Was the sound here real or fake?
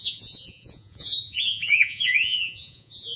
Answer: fake